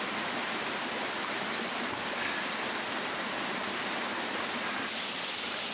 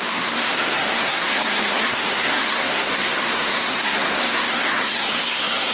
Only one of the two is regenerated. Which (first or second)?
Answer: second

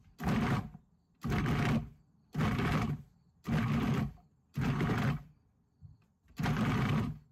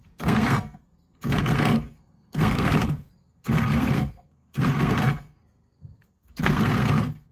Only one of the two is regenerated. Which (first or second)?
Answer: second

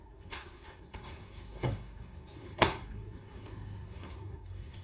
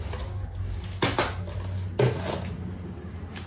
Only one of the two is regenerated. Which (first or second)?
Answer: first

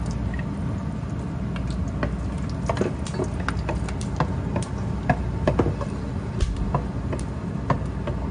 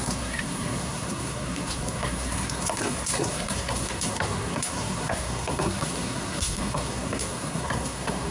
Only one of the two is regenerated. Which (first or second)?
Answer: second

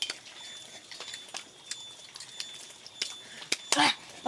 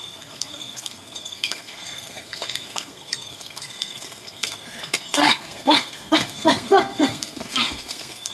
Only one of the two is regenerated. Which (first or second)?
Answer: second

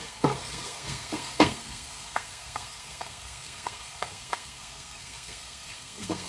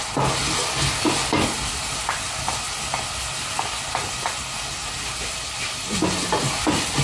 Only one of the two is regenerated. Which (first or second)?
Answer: first